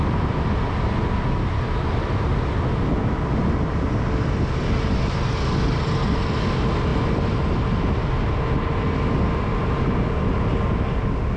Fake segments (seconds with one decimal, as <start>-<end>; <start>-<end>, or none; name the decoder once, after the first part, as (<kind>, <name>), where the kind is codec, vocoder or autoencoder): none